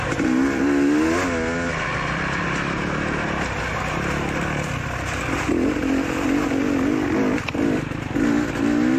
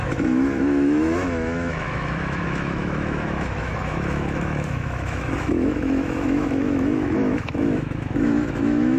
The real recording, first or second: first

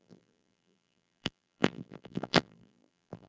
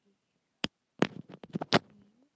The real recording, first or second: second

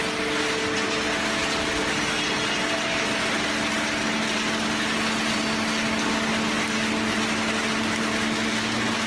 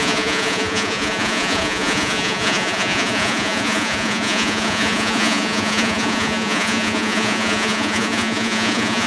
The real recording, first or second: first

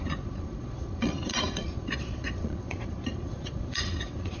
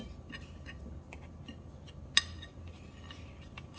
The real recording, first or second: second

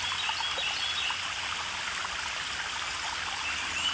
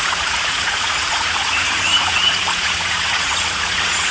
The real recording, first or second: first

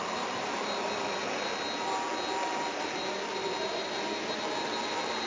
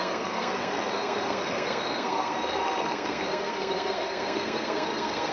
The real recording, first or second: first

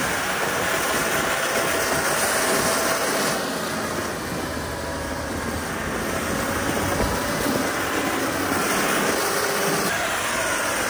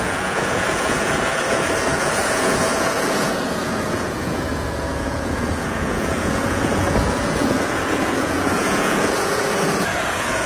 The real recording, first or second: first